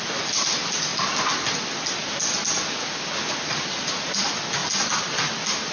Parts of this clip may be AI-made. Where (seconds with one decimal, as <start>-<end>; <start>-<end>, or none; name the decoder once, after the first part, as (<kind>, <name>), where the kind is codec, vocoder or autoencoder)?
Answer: none